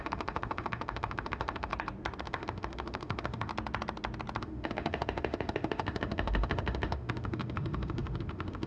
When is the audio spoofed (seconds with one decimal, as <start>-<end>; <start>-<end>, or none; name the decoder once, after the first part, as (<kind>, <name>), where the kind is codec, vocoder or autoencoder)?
0.0-1.7 (autoencoder, DAC-VAE); 2.2-3.5; 4.4-8.7